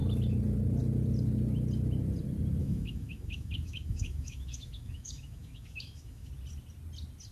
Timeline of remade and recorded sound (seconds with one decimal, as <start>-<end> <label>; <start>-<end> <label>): 0.0-2.6 recorded; 2.6-6.3 remade; 6.3-7.3 recorded